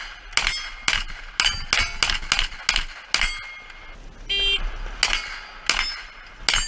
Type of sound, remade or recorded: recorded